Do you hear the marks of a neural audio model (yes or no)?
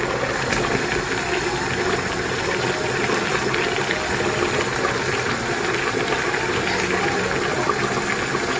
no